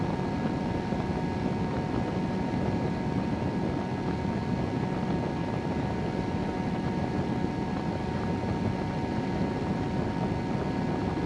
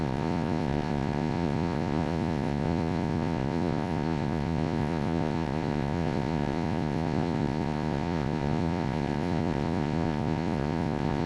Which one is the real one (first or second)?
first